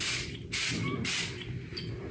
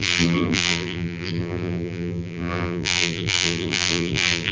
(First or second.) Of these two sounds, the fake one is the second